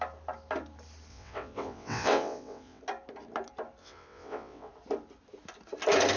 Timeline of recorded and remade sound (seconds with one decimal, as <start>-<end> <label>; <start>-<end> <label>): 0.0-1.1 recorded; 1.1-2.8 remade; 2.8-3.8 recorded; 3.8-4.7 remade; 4.7-6.2 recorded